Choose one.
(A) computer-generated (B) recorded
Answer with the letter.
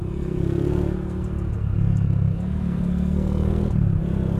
A